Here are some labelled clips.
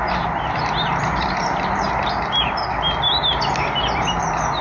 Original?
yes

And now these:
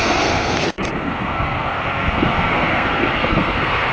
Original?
no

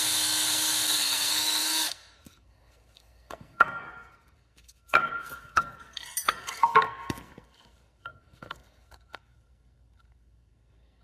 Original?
no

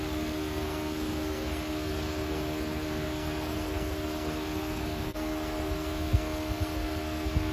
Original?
no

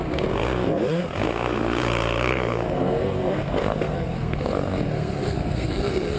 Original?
no